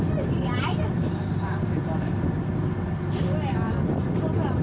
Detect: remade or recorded recorded